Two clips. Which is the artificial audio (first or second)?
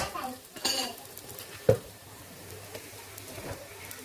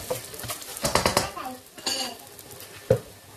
first